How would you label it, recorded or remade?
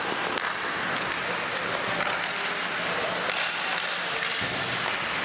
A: recorded